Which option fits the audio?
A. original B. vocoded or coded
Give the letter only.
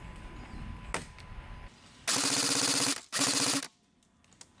A